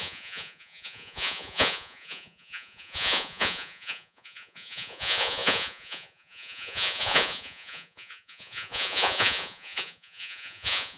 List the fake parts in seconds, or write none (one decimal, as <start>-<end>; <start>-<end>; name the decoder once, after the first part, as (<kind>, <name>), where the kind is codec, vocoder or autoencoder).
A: 0.0-11.0 (vocoder, Vocos)